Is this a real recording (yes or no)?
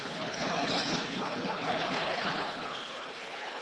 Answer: no